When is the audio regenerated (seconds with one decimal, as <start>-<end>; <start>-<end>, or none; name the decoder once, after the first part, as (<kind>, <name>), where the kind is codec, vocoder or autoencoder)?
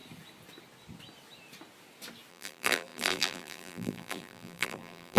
2.3-5.2 (vocoder, BigVGAN v2)